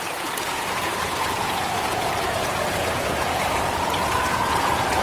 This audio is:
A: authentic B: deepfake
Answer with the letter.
B